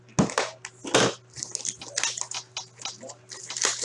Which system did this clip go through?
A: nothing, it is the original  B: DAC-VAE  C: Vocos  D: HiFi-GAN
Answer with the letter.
A